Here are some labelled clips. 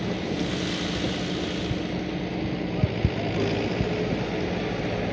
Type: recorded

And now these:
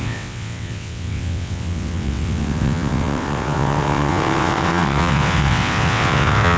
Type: remade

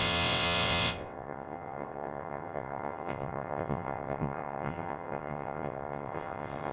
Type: remade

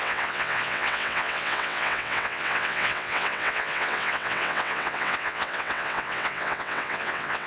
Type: remade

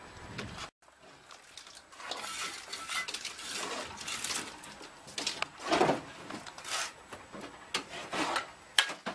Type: recorded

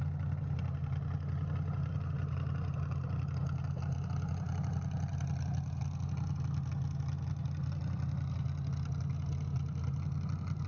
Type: recorded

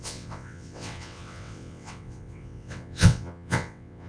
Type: remade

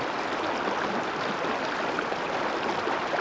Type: recorded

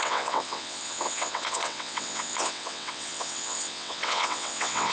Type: remade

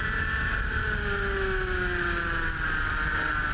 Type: recorded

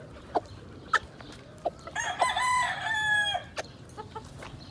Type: recorded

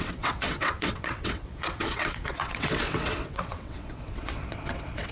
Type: remade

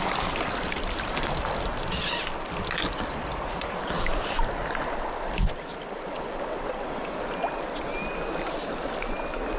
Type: recorded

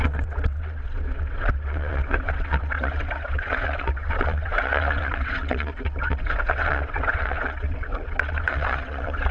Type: remade